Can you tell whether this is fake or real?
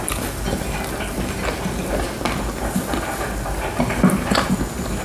real